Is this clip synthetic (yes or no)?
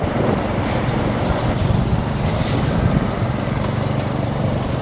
yes